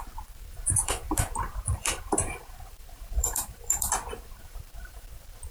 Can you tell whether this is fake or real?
fake